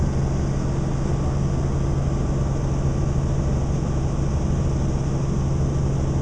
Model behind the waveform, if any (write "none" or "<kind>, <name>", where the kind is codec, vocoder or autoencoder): none